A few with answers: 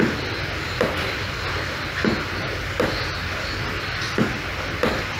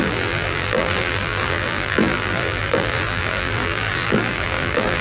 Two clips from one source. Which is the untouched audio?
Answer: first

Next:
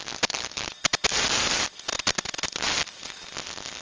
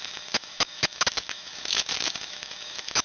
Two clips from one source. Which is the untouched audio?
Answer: first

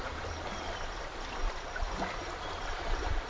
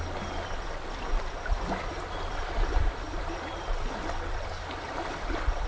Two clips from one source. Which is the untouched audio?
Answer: second